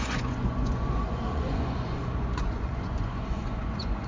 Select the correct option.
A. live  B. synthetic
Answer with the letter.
B